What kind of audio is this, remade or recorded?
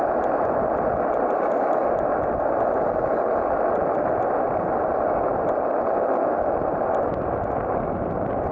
recorded